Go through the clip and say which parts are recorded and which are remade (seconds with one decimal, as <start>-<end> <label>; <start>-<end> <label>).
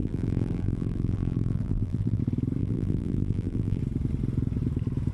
0.0-2.2 remade; 2.2-2.6 recorded; 2.6-3.8 remade; 3.8-5.1 recorded